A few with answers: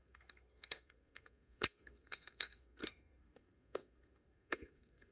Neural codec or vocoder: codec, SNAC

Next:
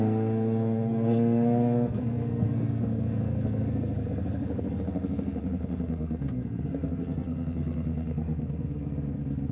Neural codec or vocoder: codec, SNAC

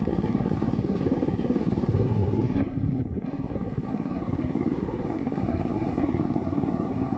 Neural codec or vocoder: codec, SNAC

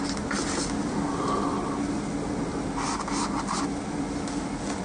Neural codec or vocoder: none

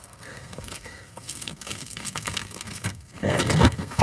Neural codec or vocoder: codec, SNAC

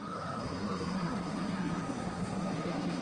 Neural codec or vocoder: codec, SNAC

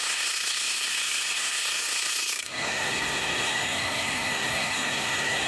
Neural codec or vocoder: codec, SNAC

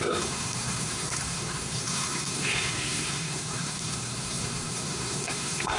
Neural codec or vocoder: codec, SNAC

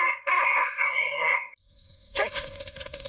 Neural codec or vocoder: codec, SNAC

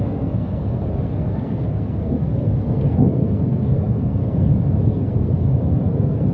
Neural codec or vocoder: codec, SNAC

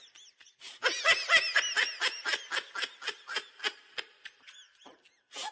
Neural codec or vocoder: none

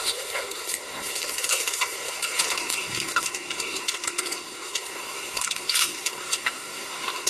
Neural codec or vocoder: codec, SNAC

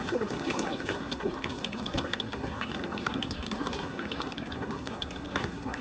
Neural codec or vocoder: codec, SNAC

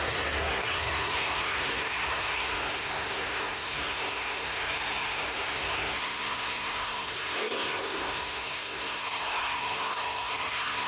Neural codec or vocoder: codec, SNAC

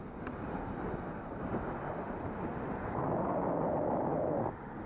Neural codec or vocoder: none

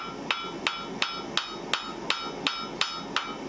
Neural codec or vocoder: none